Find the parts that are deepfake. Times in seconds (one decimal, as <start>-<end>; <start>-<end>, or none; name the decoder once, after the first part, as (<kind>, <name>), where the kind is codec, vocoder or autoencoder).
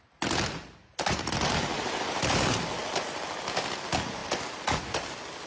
none